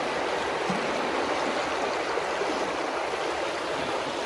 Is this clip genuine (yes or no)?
yes